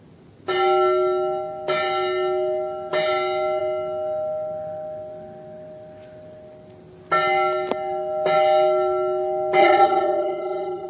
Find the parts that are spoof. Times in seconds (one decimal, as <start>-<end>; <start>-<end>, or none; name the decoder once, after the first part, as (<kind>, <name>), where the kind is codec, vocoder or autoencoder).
9.6-10.9 (vocoder, HiFi-GAN)